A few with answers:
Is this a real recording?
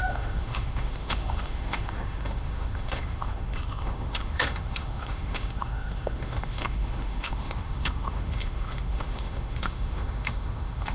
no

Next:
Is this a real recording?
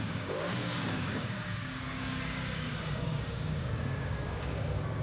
no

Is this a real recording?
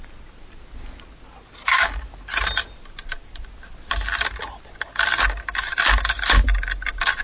yes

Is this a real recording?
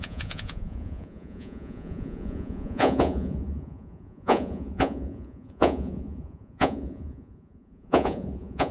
no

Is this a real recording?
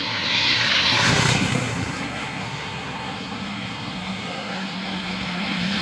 no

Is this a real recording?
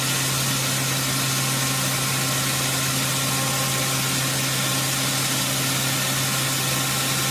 yes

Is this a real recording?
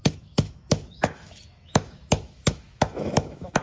no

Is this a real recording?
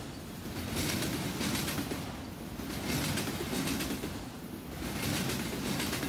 yes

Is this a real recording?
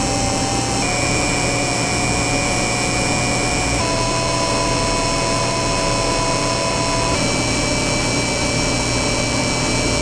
no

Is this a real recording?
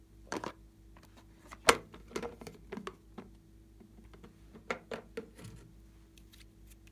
yes